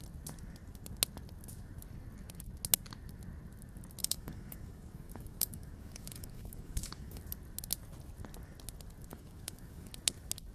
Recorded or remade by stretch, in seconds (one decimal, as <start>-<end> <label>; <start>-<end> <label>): 0.0-4.0 recorded; 4.0-7.2 remade; 7.2-9.1 recorded; 9.1-9.9 remade; 9.9-10.5 recorded